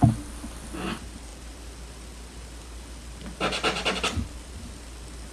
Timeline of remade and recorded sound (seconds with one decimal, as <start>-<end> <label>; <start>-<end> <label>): 0.0-5.3 recorded